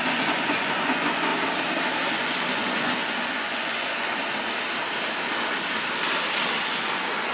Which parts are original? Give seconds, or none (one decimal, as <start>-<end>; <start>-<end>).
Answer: 1.3-2.1; 4.2-6.6